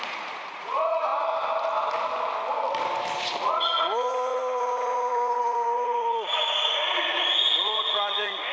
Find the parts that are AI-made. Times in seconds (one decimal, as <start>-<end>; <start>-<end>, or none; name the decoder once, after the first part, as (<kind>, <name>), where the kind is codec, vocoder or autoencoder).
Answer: 0.0-1.1 (vocoder, Vocos); 3.2-8.5